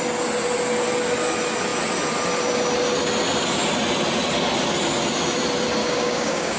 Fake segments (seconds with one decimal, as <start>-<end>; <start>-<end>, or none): 5.8-6.6